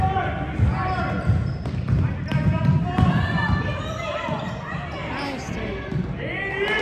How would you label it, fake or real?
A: real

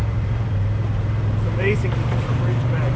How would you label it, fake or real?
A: fake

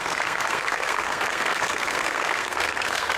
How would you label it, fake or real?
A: fake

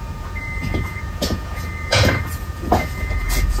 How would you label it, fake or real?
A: fake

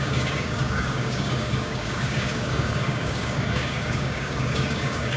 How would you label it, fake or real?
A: fake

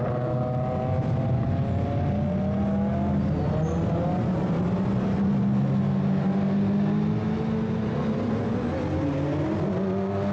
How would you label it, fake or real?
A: real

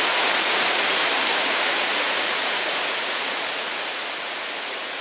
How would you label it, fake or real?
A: fake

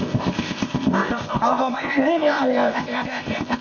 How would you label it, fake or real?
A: fake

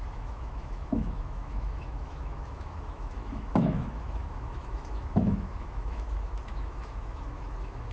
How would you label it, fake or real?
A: fake